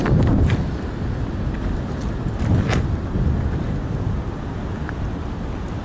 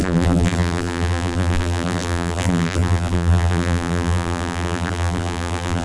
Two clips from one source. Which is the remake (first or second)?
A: second